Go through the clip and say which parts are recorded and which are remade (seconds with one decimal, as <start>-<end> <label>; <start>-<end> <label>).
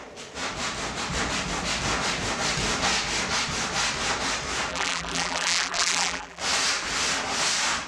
0.0-4.7 recorded; 4.7-6.4 remade; 6.4-7.9 recorded